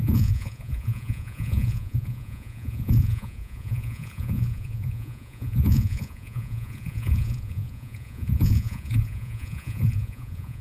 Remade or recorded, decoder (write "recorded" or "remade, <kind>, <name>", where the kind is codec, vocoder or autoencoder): remade, vocoder, Vocos